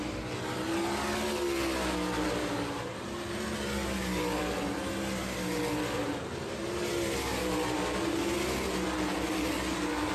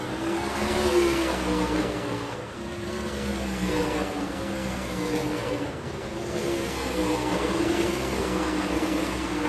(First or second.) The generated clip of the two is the second